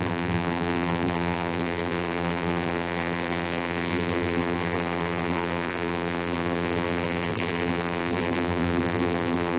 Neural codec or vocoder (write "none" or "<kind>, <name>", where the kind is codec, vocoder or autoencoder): vocoder, BigVGAN v2